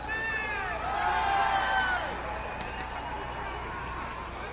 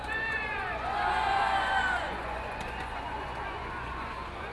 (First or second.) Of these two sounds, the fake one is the second